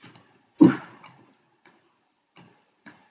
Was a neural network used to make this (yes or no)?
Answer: yes